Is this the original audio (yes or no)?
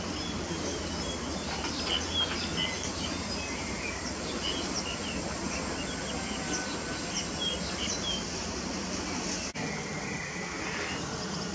yes